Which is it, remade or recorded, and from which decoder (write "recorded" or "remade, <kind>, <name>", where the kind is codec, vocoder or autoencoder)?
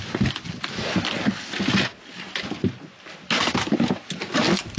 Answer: recorded